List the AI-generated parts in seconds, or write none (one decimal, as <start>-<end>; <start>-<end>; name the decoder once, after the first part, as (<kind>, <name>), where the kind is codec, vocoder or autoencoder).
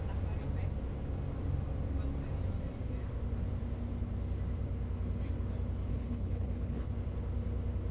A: 5.9-6.9 (codec, HILCodec)